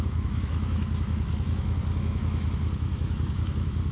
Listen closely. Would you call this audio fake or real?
fake